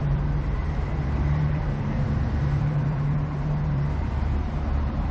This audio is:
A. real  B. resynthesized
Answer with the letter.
B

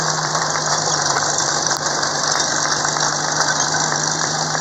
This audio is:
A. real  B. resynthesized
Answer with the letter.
B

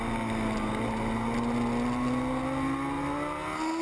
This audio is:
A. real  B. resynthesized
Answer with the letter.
A